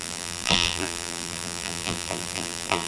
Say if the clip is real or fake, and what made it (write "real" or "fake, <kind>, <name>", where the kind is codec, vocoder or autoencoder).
fake, vocoder, BigVGAN v2